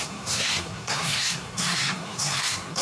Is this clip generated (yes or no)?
yes